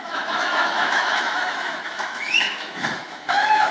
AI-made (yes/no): yes